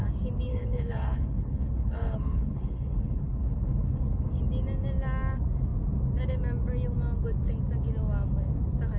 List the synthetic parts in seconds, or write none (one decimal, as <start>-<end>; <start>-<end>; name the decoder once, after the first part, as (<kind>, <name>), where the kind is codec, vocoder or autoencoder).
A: 0.5-4.3 (codec, HILCodec)